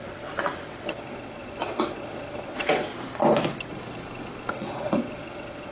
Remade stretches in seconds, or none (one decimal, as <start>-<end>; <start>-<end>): 0.0-2.9; 4.5-5.7